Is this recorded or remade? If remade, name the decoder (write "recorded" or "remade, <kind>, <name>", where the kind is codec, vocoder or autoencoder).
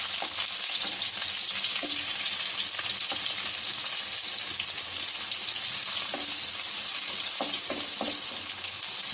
recorded